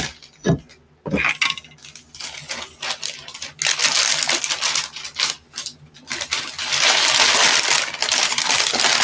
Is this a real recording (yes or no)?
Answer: yes